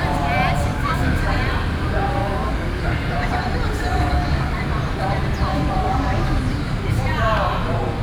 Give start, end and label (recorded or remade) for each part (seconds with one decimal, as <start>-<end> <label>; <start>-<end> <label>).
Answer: 0.0-0.7 recorded; 0.7-1.4 remade; 1.4-2.2 recorded; 2.2-2.8 remade; 2.8-3.9 recorded; 3.9-4.6 remade; 4.6-5.5 recorded; 5.5-6.4 remade; 6.4-8.0 recorded